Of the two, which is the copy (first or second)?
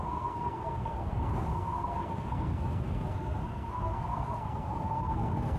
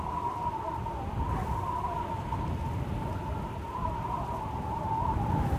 first